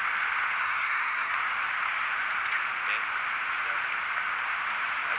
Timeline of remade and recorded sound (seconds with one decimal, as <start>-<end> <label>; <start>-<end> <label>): 0.0-0.6 recorded; 0.6-1.3 remade; 1.3-5.2 recorded